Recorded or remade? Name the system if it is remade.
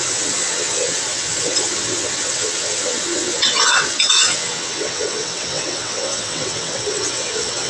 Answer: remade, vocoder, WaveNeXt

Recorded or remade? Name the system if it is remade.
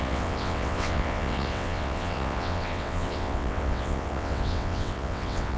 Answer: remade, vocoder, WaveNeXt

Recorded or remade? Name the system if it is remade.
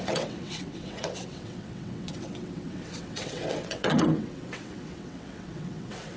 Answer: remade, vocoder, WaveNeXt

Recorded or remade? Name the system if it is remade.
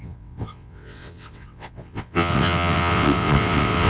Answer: remade, vocoder, WaveNeXt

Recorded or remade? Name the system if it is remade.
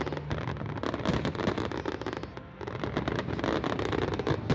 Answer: recorded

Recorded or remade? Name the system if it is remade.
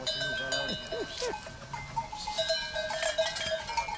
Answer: recorded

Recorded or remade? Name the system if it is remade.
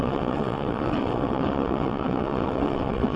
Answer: remade, vocoder, WaveNeXt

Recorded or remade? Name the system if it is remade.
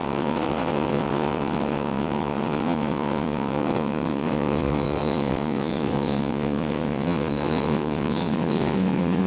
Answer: remade, vocoder, WaveNeXt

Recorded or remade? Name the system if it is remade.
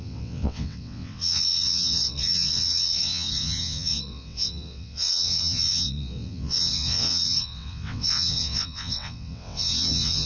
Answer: remade, vocoder, WaveNeXt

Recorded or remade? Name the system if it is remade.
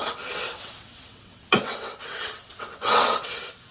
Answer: remade, vocoder, WaveNeXt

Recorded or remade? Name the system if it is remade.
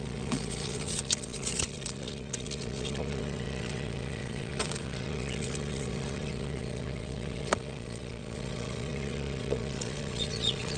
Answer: remade, vocoder, WaveNeXt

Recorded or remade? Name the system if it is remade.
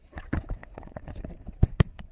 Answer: remade, vocoder, WaveNeXt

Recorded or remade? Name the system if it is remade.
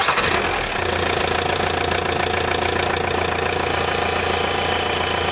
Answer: recorded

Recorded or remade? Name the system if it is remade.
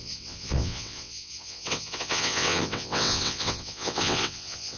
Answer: remade, vocoder, WaveNeXt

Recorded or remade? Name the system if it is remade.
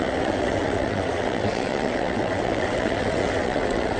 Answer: remade, vocoder, WaveNeXt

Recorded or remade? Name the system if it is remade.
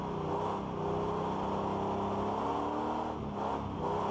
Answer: recorded